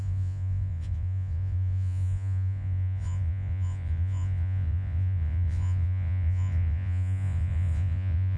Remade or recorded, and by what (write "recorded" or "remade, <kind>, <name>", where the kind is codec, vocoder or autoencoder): remade, vocoder, Vocos